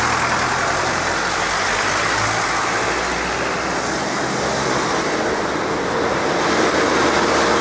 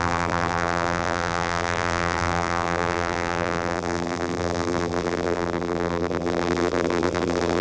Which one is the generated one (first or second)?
second